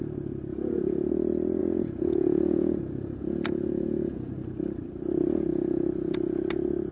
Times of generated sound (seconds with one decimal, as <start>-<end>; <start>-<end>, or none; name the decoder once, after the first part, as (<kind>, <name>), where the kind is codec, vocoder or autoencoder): 0.5-1.1 (vocoder, Vocos); 1.6-4.3; 5.5-6.5